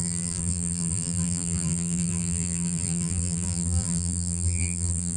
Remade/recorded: remade